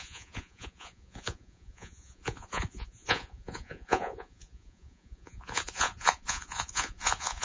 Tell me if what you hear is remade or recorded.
remade